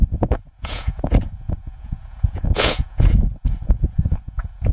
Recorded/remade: remade